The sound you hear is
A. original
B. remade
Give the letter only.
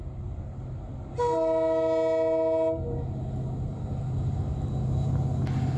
A